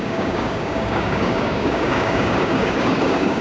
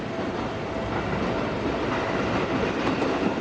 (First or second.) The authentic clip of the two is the second